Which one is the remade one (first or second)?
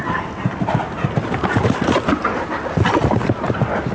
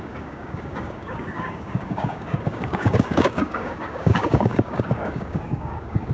second